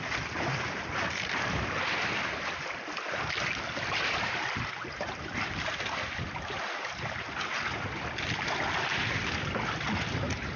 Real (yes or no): yes